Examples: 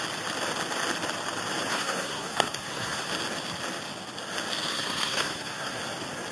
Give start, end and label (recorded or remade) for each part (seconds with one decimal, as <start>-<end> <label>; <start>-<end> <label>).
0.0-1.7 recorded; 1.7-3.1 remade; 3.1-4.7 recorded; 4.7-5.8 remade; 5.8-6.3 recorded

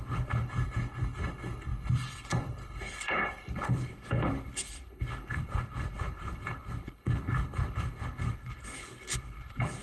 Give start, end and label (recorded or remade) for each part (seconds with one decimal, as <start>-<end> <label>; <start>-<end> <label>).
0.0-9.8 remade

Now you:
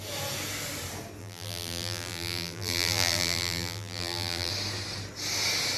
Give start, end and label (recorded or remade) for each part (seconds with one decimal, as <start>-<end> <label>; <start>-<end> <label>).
0.0-1.2 recorded; 1.2-4.5 remade; 4.5-5.8 recorded

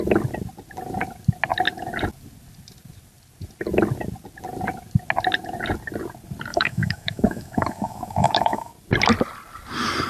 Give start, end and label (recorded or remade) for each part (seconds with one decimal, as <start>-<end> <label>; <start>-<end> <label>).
0.0-6.5 recorded; 6.5-8.7 remade; 8.7-10.1 recorded

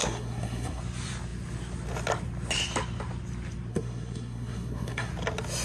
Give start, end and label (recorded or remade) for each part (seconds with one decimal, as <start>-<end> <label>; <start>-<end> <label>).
0.0-0.8 remade; 0.8-3.7 recorded; 3.7-5.1 remade; 5.1-5.6 recorded

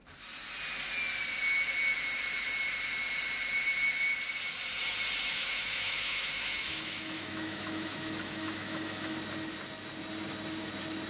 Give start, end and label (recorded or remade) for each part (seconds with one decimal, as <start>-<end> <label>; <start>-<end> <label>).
0.0-5.3 recorded; 5.3-9.2 remade; 9.2-11.1 recorded

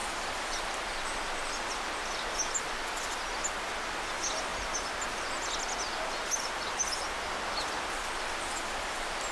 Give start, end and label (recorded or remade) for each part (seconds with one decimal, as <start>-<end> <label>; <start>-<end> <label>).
0.0-9.3 recorded

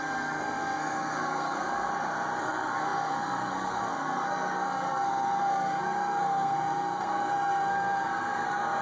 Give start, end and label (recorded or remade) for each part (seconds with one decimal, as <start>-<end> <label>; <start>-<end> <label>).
0.0-1.9 remade; 1.9-2.4 recorded; 2.4-8.8 remade